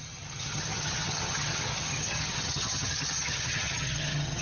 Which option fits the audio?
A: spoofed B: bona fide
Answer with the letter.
A